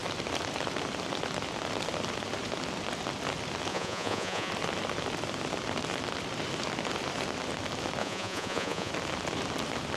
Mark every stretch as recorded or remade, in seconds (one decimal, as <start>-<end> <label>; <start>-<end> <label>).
0.0-3.7 recorded; 3.7-4.5 remade; 4.5-8.0 recorded; 8.0-8.9 remade; 8.9-10.0 recorded